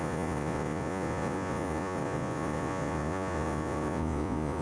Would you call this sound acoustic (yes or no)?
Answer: no